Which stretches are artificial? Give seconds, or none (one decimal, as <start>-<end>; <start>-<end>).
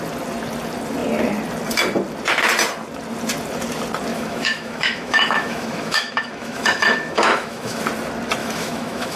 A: 4.1-7.8; 8.4-9.2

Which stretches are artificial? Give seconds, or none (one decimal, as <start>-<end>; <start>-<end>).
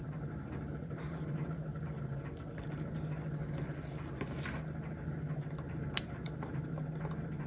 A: 0.0-1.7; 5.9-7.5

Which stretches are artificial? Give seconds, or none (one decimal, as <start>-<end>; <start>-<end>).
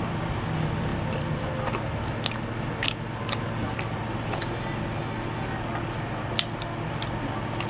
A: none